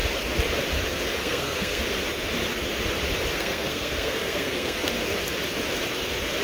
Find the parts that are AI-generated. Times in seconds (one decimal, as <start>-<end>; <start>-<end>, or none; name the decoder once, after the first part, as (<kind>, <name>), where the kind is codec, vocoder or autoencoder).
1.2-1.8 (codec, SNAC); 3.3-4.9